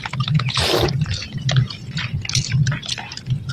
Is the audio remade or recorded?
recorded